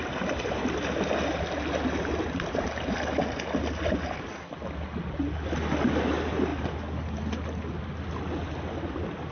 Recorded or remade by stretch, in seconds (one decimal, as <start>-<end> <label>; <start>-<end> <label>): 0.0-9.3 recorded